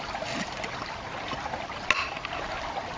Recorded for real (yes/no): yes